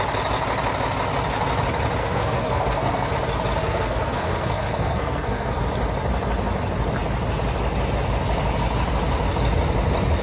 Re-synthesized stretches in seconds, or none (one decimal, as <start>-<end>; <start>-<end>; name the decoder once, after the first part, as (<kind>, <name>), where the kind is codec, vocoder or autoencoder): 2.0-3.1 (codec, SNAC); 3.6-5.6